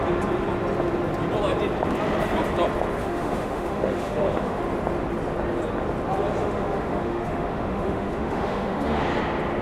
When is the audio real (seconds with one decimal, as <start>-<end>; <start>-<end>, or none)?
0.0-3.0; 4.6-6.4; 9.0-9.6